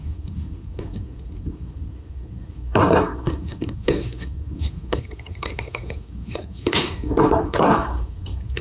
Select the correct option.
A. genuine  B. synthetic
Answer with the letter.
B